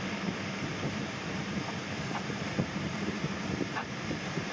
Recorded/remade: remade